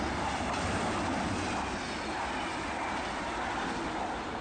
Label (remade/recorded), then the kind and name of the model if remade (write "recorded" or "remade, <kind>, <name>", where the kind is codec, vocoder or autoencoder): recorded